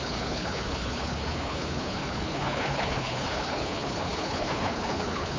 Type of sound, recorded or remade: remade